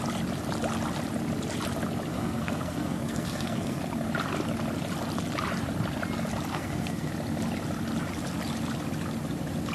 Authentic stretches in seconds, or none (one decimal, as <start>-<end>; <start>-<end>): 0.0-2.1; 3.8-6.5; 7.1-9.7